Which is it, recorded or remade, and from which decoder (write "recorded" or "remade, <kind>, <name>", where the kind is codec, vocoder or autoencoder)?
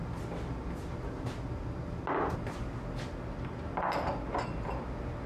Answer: recorded